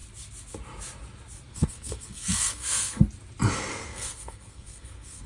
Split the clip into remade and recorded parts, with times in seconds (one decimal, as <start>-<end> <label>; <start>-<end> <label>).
0.0-1.5 recorded; 1.5-3.0 remade; 3.0-3.7 recorded; 3.7-5.3 remade